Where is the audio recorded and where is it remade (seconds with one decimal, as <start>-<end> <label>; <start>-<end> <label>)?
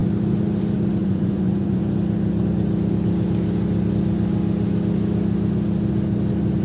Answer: 0.0-1.0 recorded; 1.0-1.8 remade; 1.8-6.6 recorded